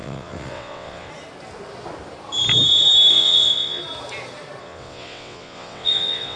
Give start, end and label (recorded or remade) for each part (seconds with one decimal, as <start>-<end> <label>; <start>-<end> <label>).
0.0-1.1 remade; 1.1-3.1 recorded; 3.1-3.8 remade; 3.8-4.6 recorded; 4.6-6.4 remade